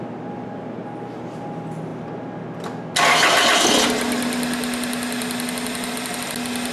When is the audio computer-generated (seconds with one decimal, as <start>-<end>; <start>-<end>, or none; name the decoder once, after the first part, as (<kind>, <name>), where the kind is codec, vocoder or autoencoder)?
none